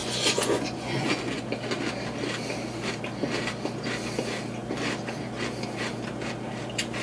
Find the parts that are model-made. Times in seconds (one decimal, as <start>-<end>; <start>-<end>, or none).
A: 0.0-1.5